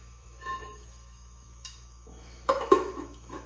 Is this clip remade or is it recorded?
remade